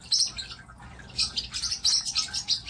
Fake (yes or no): no